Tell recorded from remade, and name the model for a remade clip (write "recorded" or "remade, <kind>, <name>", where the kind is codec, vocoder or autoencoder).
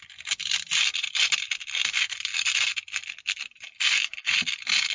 recorded